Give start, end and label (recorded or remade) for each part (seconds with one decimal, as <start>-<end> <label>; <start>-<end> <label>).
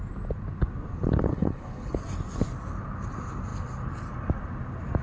0.0-1.3 recorded; 1.3-1.9 remade; 1.9-5.0 recorded